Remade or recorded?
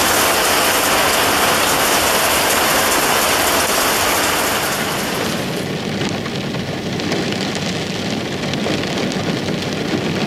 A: recorded